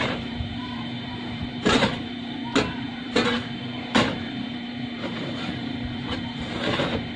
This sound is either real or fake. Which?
fake